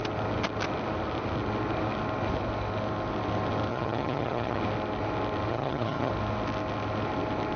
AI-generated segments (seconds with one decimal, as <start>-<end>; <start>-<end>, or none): 3.7-4.6; 5.5-6.1